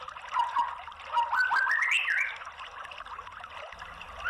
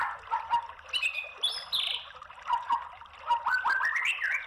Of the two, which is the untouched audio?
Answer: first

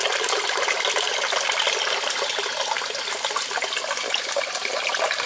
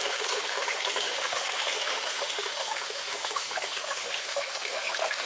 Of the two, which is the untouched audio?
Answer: first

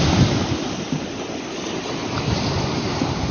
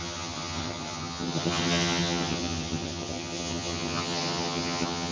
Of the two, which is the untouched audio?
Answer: first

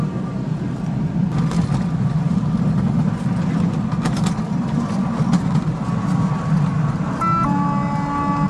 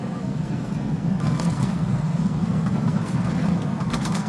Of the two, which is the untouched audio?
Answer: first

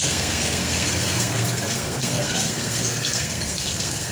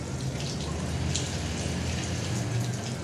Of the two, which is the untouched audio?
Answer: second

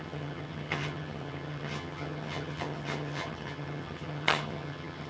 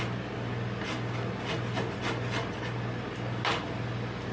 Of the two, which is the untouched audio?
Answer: second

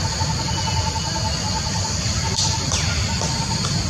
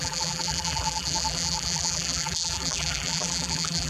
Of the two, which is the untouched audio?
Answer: first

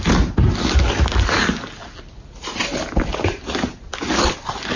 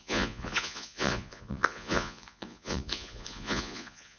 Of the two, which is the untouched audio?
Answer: first